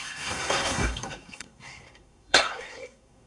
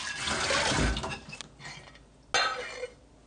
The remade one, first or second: first